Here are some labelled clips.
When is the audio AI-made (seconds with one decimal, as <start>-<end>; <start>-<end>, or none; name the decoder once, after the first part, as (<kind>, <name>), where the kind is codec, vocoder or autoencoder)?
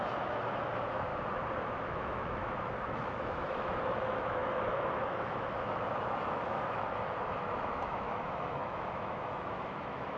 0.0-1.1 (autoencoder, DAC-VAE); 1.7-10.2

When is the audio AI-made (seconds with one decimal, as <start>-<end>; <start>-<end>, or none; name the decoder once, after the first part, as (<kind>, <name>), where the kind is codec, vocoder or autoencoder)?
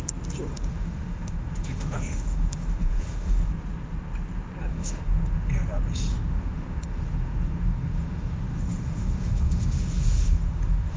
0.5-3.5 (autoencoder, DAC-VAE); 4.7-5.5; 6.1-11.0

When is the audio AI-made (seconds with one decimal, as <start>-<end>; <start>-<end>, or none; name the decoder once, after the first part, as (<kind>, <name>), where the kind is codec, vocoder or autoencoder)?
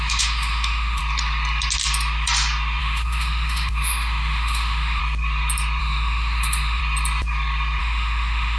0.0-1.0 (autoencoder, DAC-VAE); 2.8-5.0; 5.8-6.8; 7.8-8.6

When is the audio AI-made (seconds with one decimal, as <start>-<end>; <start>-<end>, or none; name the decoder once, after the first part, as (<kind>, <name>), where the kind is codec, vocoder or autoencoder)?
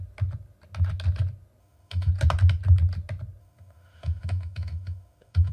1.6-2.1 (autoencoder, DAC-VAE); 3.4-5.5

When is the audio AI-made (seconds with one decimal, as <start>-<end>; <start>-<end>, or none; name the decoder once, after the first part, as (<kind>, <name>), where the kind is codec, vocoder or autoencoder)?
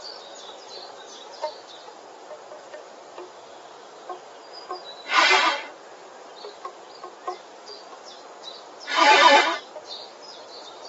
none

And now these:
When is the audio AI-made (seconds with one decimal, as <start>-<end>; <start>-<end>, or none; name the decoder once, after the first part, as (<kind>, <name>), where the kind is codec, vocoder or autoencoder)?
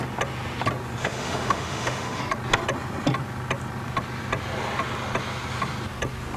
1.0-2.2 (autoencoder, DAC-VAE)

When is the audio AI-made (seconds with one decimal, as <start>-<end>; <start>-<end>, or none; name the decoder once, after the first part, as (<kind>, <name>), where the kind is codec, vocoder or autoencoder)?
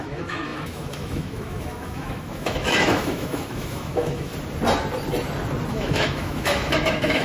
0.0-4.3 (autoencoder, DAC-VAE); 5.7-7.2